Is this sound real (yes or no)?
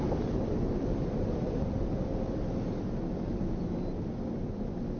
yes